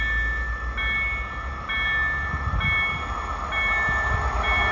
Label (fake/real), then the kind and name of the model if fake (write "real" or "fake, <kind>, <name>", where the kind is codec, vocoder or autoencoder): real